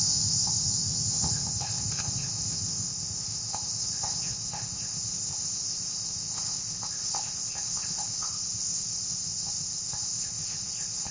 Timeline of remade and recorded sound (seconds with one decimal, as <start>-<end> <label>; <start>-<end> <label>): 0.0-11.1 remade